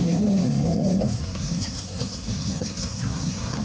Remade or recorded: remade